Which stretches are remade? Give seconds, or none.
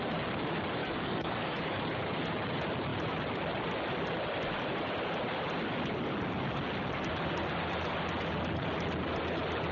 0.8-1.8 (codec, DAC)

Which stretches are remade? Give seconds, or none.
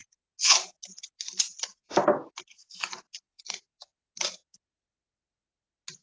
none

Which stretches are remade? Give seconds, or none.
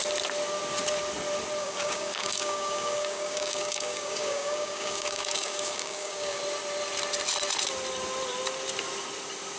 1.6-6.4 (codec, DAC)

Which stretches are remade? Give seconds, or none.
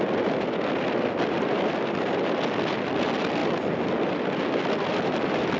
none